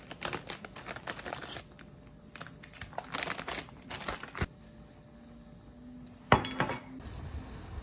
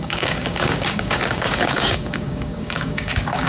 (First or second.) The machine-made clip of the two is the second